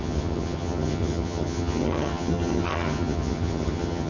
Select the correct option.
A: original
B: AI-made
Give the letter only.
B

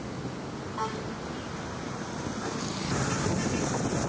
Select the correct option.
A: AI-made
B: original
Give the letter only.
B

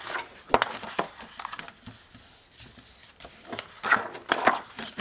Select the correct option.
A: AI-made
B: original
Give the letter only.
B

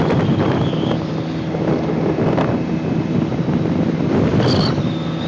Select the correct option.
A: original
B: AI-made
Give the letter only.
A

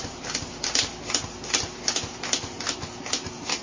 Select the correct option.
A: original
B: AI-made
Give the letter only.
A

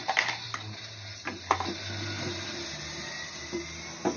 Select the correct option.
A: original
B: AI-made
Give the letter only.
A